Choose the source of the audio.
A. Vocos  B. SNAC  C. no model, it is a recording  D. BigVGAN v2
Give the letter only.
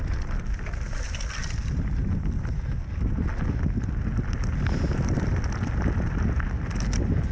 C